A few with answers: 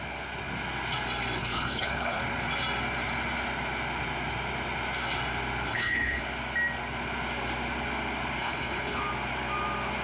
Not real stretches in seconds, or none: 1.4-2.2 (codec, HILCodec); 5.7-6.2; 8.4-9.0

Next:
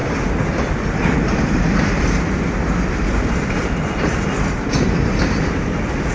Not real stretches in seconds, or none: none

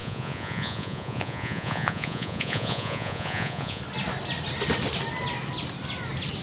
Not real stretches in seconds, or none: 0.0-3.8 (vocoder, Vocos)

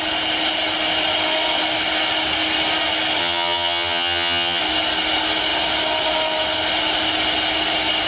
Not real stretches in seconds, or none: 3.2-4.6 (vocoder, HiFi-GAN)

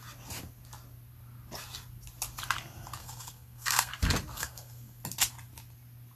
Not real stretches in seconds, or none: 3.0-3.9 (codec, SNAC); 4.3-5.0

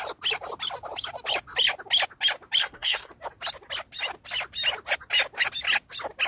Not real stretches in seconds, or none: 2.6-3.1 (codec, SNAC)

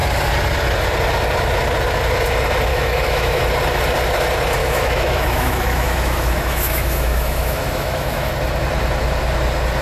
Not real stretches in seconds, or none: 2.7-3.4 (autoencoder, DAC-VAE); 4.6-8.3